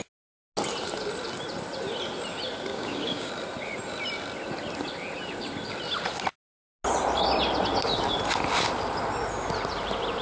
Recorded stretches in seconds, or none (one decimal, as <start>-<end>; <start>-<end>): 0.0-2.7; 3.3-10.2